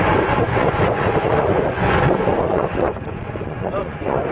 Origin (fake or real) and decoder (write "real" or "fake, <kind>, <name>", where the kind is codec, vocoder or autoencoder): fake, vocoder, Vocos